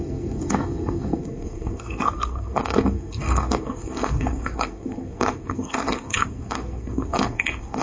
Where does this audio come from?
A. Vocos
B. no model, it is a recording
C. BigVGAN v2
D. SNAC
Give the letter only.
D